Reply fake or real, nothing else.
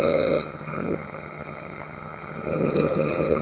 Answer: fake